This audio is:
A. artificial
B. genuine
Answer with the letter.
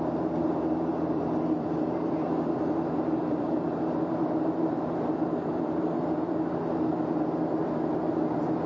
A